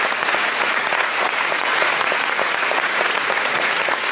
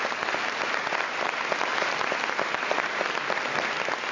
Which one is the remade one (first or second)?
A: first